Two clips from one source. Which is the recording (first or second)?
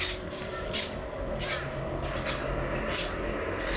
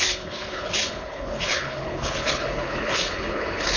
first